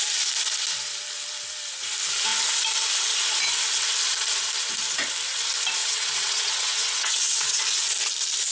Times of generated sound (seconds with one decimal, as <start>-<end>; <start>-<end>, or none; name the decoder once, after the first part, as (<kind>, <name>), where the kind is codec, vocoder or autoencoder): 5.8-7.6 (vocoder, WaveNeXt)